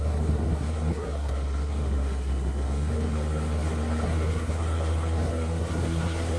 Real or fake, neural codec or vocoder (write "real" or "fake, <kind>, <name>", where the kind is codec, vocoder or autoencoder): fake, codec, SNAC